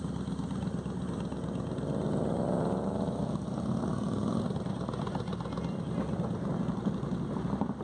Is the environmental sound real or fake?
real